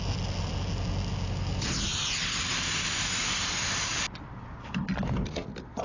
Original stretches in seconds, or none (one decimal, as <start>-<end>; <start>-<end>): 0.0-5.8